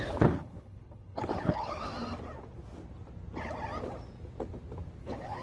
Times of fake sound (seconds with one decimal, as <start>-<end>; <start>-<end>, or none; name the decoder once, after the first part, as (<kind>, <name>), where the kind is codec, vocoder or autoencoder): 0.0-1.9 (codec, HILCodec); 5.0-5.4